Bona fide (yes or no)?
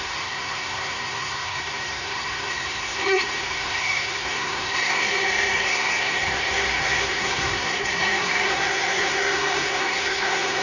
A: no